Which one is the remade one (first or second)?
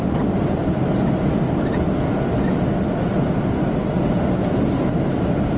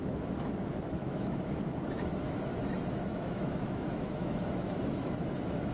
second